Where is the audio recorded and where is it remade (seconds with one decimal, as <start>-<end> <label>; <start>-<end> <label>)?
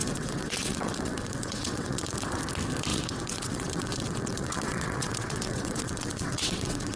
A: 0.0-2.4 remade; 2.4-2.9 recorded; 2.9-7.0 remade